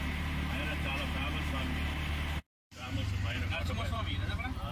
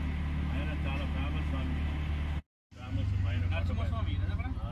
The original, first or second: second